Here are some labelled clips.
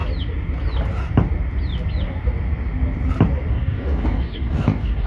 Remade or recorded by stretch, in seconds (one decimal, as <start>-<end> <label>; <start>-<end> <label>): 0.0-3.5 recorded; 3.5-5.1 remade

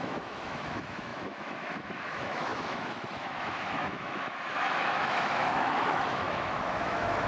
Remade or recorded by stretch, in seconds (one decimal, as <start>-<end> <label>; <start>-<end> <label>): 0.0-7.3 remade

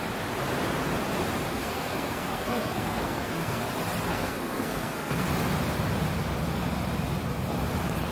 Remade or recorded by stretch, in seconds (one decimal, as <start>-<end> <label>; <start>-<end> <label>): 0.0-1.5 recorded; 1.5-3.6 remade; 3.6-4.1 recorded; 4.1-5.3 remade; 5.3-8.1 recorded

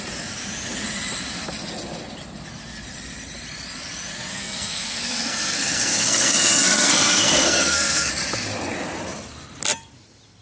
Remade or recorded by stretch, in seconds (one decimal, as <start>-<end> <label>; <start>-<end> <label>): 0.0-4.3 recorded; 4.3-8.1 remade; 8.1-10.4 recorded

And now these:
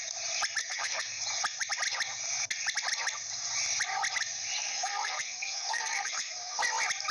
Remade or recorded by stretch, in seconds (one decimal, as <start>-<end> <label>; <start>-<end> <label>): 0.0-0.6 recorded; 0.6-1.2 remade; 1.2-4.6 recorded; 4.6-6.6 remade; 6.6-7.1 recorded

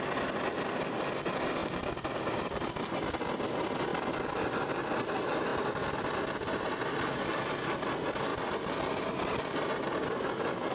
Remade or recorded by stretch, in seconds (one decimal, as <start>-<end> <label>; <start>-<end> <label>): 0.0-1.6 recorded; 1.6-3.5 remade; 3.5-3.9 recorded; 3.9-4.4 remade; 4.4-8.3 recorded; 8.3-9.7 remade; 9.7-10.7 recorded

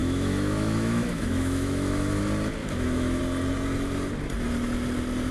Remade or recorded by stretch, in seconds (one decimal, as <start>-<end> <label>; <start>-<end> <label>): 0.0-2.2 remade; 2.2-2.6 recorded; 2.6-3.2 remade; 3.2-5.3 recorded

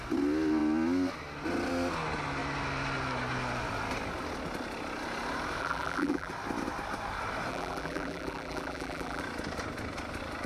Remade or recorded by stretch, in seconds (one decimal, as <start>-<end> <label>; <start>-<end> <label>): 0.0-5.6 recorded; 5.6-6.3 remade; 6.3-7.5 recorded; 7.5-9.2 remade; 9.2-10.5 recorded